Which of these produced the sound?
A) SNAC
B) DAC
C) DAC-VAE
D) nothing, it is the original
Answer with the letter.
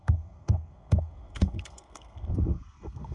A